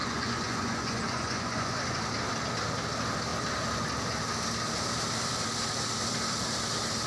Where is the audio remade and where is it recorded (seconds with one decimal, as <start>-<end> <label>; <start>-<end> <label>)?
0.0-2.0 remade; 2.0-7.1 recorded